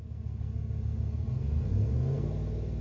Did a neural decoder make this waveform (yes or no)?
yes